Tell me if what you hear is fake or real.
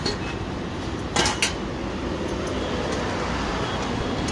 real